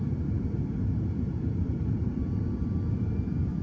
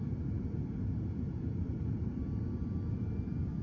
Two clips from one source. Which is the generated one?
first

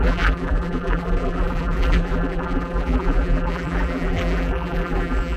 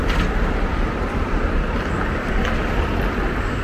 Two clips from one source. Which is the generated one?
first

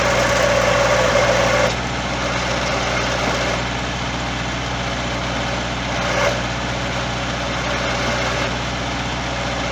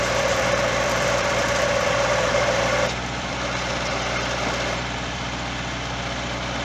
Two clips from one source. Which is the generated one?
second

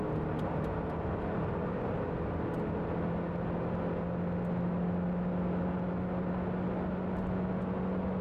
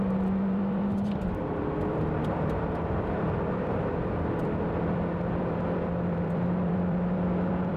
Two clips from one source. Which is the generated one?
second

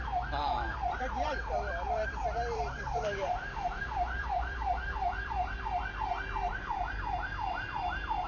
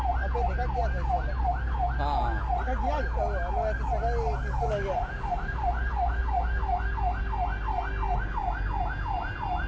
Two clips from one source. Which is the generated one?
first